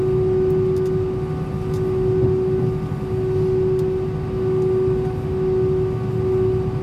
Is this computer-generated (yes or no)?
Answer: no